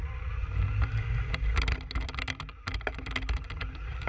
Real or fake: real